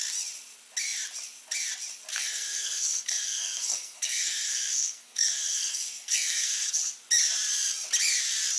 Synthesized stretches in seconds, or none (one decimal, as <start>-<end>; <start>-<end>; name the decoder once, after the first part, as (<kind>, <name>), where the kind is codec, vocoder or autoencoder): 2.1-6.8 (codec, SNAC)